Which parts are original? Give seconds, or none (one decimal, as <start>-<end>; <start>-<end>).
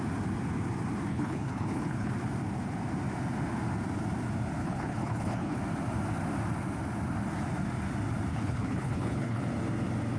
0.0-1.1; 2.1-4.6; 5.6-8.3; 9.4-10.2